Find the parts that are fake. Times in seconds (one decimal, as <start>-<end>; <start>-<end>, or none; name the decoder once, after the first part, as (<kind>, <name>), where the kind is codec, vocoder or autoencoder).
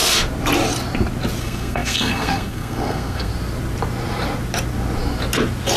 1.4-3.3 (codec, SNAC)